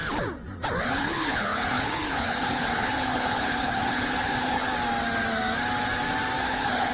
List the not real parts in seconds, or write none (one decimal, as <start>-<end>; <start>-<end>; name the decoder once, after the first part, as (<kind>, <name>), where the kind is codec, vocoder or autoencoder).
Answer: 0.8-4.7 (codec, HILCodec); 6.4-6.9